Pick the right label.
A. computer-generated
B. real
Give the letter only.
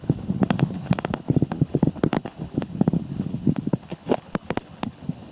A